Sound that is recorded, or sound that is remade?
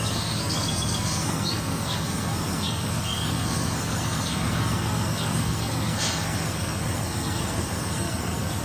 remade